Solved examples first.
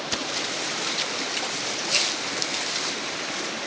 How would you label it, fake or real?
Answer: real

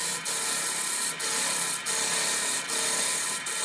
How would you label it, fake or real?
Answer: real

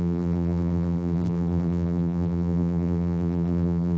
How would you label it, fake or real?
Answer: fake